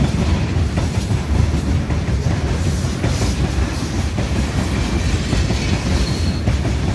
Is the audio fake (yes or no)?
no